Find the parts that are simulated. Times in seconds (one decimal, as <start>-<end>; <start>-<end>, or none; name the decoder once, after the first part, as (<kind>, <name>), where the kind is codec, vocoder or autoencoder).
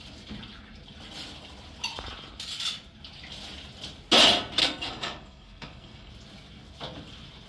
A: 4.6-6.1 (codec, SNAC)